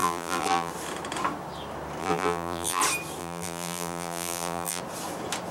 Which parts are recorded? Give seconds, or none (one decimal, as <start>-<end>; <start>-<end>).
0.7-2.0; 2.8-3.2; 4.8-5.5